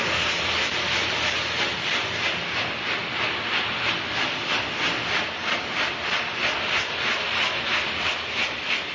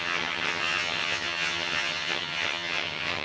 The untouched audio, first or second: first